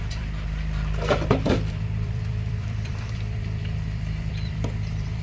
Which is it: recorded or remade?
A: remade